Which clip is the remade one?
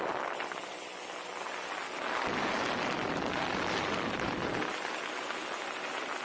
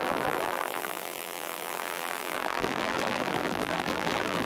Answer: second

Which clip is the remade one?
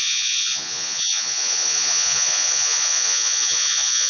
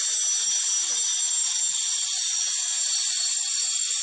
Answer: first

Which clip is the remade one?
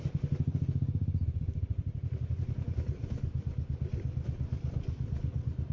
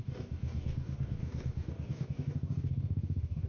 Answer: second